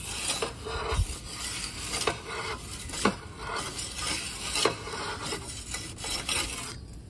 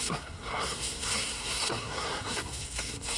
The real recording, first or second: first